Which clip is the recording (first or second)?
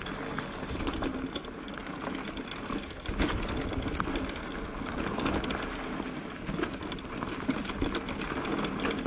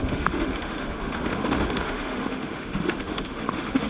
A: first